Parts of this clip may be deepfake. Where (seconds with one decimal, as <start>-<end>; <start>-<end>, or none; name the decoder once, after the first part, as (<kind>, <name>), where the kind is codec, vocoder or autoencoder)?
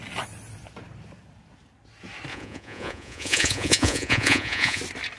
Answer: 2.3-4.8 (vocoder, Vocos)